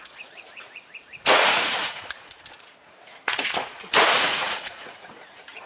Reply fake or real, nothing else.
fake